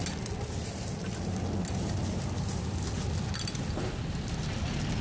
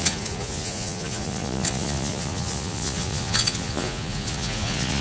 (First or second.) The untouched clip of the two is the first